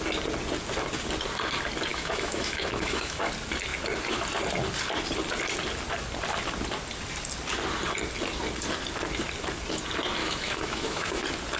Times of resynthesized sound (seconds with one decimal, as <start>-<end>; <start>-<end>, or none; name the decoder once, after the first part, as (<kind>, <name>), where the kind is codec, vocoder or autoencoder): 1.9-3.3 (autoencoder, DAC-VAE); 10.2-11.2